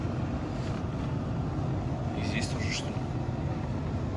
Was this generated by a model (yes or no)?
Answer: no